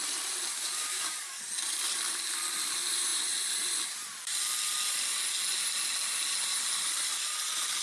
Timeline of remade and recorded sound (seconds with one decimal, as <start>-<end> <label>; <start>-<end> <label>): 0.0-0.5 recorded; 0.5-1.4 remade; 1.4-7.8 recorded